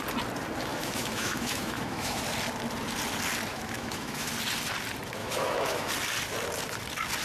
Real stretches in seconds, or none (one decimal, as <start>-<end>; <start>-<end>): 0.0-0.7; 2.2-3.5; 4.3-5.2; 5.9-7.2